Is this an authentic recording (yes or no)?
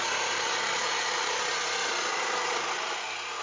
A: yes